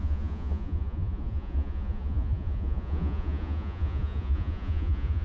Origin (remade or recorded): remade